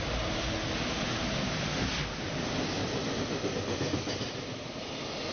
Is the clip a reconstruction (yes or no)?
no